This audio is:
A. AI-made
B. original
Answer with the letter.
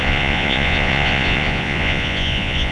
A